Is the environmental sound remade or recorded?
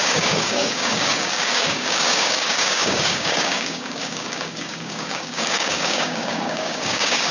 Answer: remade